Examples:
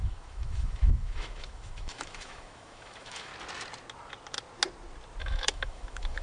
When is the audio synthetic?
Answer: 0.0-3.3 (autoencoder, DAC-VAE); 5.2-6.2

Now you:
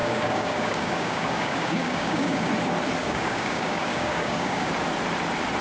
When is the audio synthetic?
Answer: 0.0-2.5 (codec, DAC); 3.0-4.7

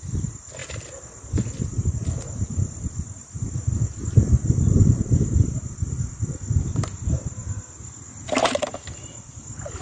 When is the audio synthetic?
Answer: none